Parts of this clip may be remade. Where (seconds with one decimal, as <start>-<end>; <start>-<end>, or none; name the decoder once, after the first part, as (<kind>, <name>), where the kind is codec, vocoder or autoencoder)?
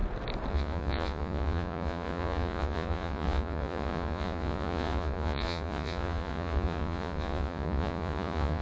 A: 0.5-8.6 (vocoder, Vocos)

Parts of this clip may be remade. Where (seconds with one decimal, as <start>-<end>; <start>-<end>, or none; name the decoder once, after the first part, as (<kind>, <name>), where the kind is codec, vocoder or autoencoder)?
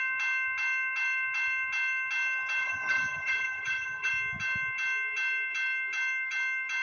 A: 2.6-4.1 (vocoder, HiFi-GAN)